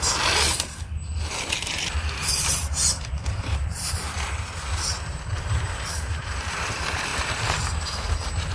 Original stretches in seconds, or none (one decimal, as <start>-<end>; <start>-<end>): 0.0-2.2; 6.5-8.5